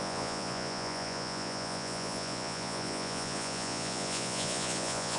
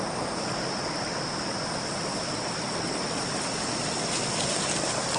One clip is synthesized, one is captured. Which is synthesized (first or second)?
first